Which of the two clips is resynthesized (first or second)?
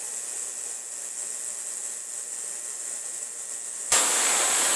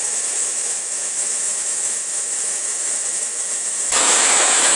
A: second